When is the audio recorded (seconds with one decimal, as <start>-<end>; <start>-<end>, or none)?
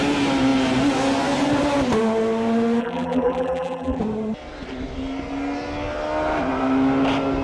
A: 0.0-2.8; 4.0-7.4